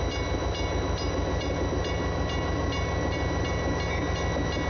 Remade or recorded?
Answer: recorded